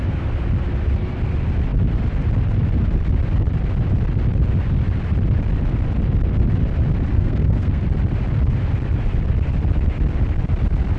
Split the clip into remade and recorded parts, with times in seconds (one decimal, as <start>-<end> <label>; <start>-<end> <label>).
0.0-7.1 recorded; 7.1-7.8 remade; 7.8-11.0 recorded

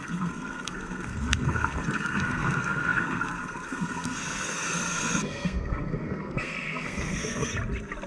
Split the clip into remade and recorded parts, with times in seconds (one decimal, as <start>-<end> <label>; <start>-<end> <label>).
0.0-7.5 remade; 7.5-8.1 recorded

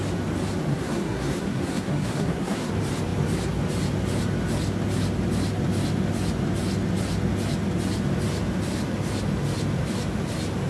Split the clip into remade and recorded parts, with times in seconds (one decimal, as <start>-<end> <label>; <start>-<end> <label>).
0.0-0.7 recorded; 0.7-2.7 remade; 2.7-10.7 recorded

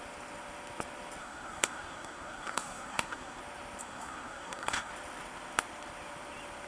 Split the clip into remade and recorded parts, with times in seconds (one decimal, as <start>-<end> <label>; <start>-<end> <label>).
0.0-1.2 recorded; 1.2-3.4 remade; 3.4-3.8 recorded; 3.8-4.9 remade; 4.9-6.7 recorded